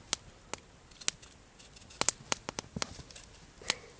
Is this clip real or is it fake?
real